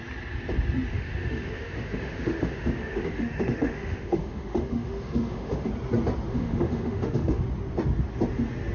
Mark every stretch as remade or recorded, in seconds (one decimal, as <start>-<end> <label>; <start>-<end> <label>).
0.0-0.9 recorded; 0.9-5.7 remade; 5.7-6.3 recorded; 6.3-7.4 remade; 7.4-8.7 recorded